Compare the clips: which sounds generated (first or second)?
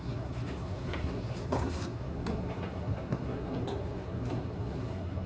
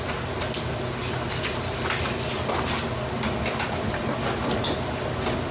first